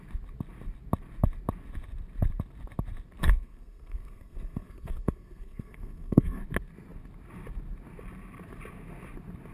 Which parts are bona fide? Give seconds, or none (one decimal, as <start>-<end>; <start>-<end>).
0.0-3.2; 6.4-9.5